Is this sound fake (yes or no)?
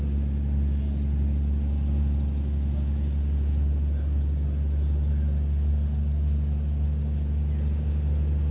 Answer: no